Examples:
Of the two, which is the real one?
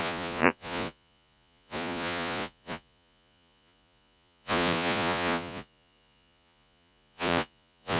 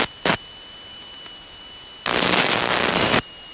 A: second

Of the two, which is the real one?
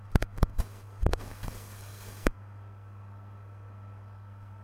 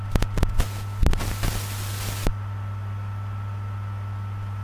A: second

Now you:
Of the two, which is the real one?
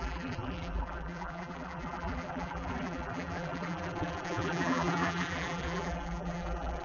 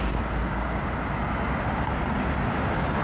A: second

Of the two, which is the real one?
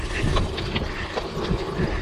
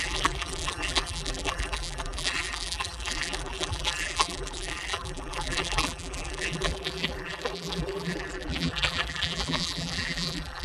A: first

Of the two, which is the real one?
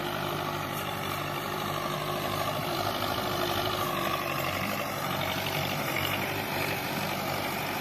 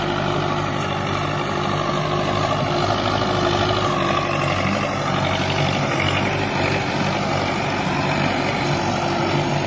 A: second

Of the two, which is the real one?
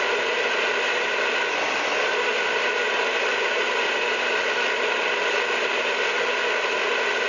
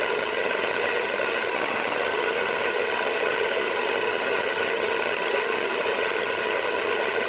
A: first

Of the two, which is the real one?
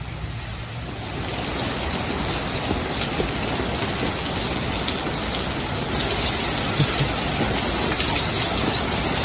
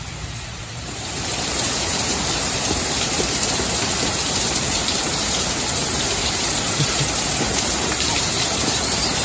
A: first